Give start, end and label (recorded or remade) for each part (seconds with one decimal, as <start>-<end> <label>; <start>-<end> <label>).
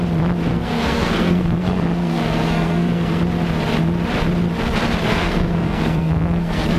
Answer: 0.0-0.5 recorded; 0.5-3.2 remade; 3.2-5.1 recorded; 5.1-6.8 remade